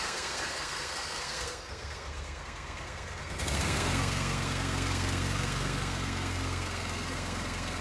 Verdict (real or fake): fake